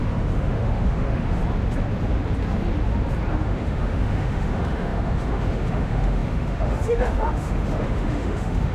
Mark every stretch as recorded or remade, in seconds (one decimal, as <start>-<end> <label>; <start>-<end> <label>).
0.0-1.4 remade; 1.4-3.3 recorded; 3.3-8.7 remade